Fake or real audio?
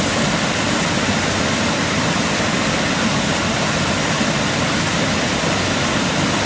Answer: real